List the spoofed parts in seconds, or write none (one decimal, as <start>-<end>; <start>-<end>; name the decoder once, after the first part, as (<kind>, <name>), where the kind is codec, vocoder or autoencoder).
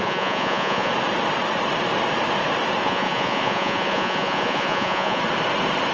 0.0-0.9 (vocoder, Vocos); 2.8-5.2